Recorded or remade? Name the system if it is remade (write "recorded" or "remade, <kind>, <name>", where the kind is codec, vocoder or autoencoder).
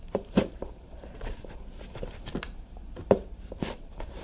remade, vocoder, BigVGAN v2